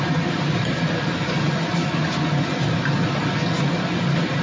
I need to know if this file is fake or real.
real